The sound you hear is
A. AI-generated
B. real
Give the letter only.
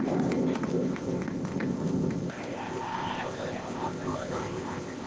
A